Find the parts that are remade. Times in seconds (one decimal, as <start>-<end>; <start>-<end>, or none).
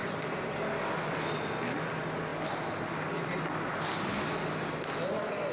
none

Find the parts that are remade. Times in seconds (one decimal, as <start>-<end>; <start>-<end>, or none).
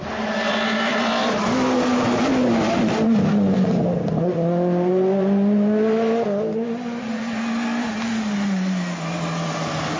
none